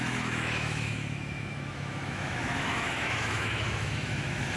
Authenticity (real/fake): fake